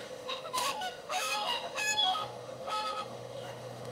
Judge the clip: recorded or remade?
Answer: remade